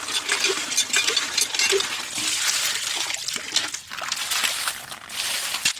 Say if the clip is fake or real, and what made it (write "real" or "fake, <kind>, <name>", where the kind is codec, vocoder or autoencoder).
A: real